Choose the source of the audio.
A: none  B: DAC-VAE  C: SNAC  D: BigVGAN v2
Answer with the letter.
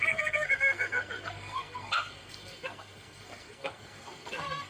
C